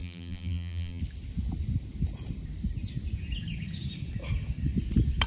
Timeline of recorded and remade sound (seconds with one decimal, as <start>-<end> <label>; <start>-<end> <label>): 0.0-1.0 remade; 1.0-5.3 recorded